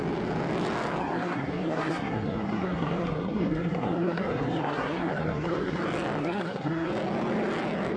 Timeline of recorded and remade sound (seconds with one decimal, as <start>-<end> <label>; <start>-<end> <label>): 0.0-1.0 recorded; 1.0-5.8 remade; 5.8-6.2 recorded; 6.2-6.9 remade; 6.9-8.0 recorded